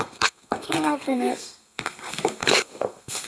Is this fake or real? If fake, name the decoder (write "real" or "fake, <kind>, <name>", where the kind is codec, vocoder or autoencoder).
fake, codec, SNAC